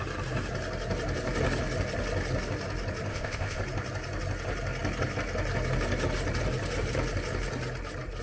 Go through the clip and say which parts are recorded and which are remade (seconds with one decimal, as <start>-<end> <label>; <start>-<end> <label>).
0.0-3.1 recorded; 3.1-3.6 remade; 3.6-8.2 recorded